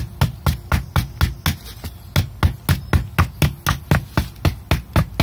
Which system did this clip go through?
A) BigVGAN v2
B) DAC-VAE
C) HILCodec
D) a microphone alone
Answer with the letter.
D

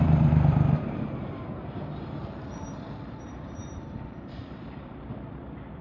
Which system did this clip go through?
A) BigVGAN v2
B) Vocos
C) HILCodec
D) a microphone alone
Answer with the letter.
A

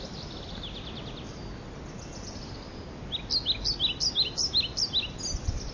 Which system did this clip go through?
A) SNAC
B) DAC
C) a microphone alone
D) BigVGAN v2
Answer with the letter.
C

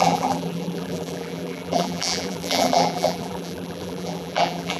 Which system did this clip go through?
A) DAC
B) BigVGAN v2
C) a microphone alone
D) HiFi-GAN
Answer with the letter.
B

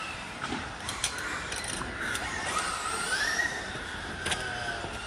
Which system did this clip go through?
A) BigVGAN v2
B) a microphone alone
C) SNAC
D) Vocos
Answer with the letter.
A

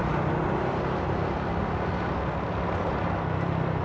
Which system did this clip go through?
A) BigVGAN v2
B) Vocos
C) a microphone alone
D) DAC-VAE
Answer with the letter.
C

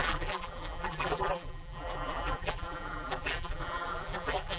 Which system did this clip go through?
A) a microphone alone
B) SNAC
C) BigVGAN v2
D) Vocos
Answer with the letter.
C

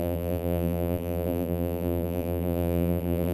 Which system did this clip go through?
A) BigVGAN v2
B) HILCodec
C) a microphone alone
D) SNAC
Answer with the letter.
A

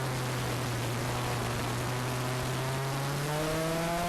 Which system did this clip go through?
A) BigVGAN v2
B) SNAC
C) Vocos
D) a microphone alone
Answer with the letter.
D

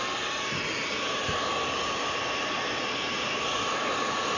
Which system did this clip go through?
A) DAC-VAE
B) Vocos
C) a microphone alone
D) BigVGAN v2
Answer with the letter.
D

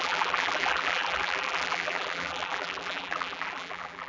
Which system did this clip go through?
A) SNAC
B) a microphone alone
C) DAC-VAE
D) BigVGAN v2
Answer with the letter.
D